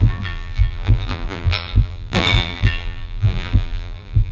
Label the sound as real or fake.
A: fake